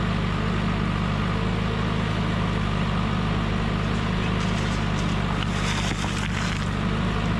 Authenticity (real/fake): real